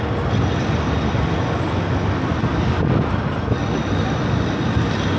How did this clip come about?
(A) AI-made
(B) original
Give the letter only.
B